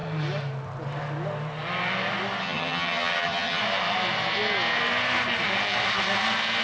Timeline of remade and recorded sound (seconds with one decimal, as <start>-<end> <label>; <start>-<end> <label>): 0.0-2.4 recorded; 2.4-3.6 remade; 3.6-6.6 recorded